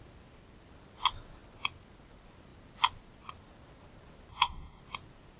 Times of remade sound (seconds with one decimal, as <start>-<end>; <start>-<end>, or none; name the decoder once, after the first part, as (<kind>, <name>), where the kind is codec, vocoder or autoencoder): 4.3-4.8 (codec, SNAC)